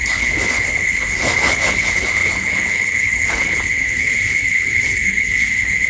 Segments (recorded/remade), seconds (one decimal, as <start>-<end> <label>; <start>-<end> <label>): 0.0-5.9 remade